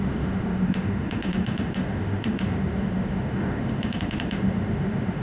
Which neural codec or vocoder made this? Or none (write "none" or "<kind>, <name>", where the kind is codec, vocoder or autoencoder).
autoencoder, DAC-VAE